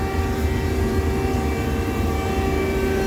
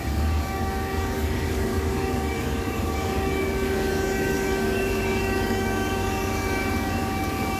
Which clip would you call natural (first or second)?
first